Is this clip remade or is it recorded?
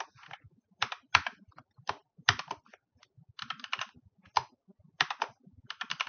recorded